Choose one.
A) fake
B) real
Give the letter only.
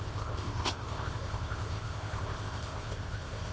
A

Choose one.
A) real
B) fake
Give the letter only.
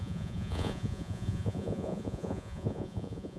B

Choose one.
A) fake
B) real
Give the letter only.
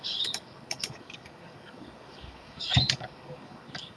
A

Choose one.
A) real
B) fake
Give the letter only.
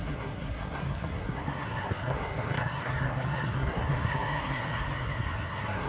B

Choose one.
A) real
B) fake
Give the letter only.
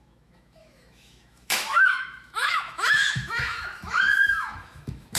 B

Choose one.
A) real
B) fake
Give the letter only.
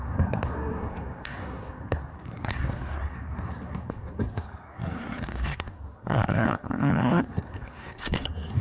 B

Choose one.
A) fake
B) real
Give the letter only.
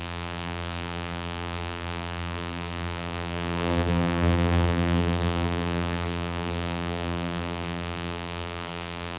A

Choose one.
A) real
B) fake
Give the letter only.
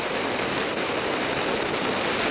A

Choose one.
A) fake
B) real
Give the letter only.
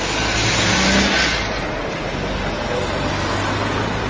B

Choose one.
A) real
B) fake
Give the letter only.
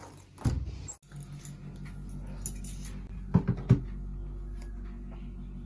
A